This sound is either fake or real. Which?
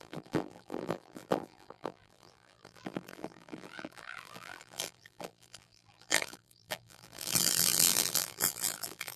fake